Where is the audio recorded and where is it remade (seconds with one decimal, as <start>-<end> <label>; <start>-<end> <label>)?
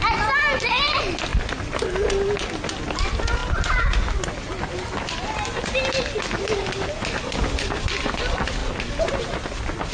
0.0-9.9 recorded